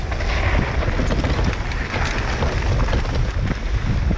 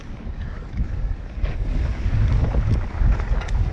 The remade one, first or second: second